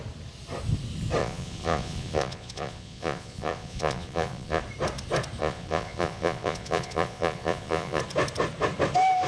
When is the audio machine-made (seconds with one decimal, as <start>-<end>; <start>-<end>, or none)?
1.2-4.6; 5.4-8.0